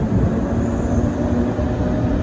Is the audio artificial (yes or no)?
no